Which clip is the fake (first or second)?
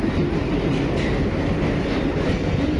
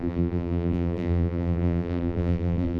second